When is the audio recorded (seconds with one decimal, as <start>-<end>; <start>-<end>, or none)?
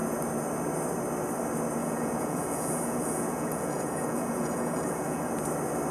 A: 0.0-1.8; 5.3-5.9